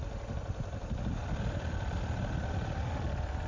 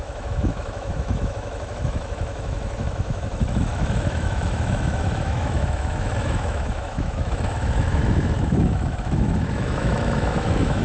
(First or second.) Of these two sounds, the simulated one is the second